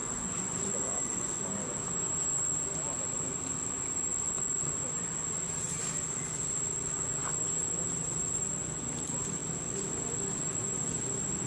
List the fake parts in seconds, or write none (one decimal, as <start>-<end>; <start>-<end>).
0.0-1.4; 4.1-4.7